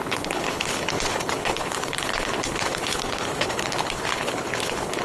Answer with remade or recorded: remade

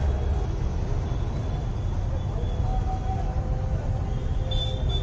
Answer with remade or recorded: recorded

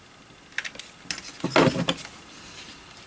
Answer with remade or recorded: recorded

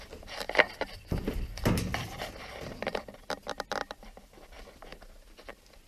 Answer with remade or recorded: remade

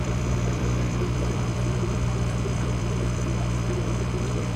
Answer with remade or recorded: remade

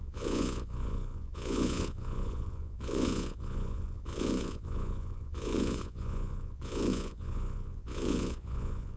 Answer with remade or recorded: remade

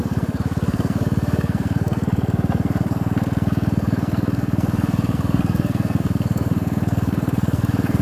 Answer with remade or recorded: remade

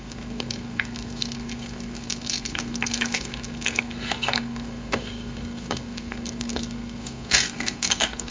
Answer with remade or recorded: remade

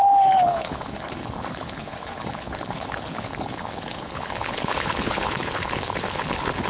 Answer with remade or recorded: remade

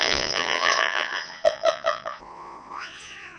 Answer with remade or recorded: remade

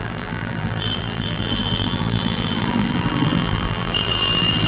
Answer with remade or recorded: remade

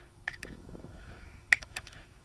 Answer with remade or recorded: remade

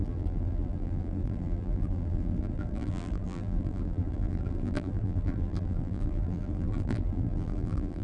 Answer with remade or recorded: remade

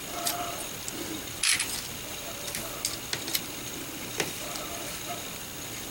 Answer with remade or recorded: recorded